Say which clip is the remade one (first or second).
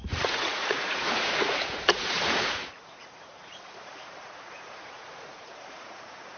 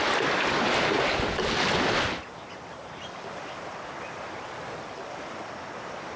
first